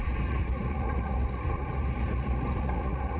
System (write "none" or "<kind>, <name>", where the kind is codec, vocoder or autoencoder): vocoder, Vocos